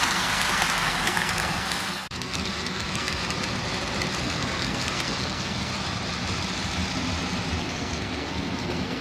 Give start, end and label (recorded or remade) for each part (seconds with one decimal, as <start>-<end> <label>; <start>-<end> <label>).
0.0-3.2 remade; 3.2-4.2 recorded; 4.2-5.7 remade; 5.7-7.6 recorded; 7.6-9.0 remade